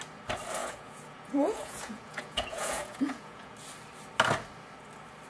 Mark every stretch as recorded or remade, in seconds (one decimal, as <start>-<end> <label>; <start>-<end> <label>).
0.0-0.6 recorded; 0.6-3.5 remade; 3.5-5.3 recorded